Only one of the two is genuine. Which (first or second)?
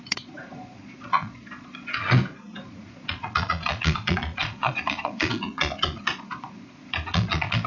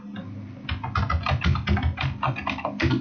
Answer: second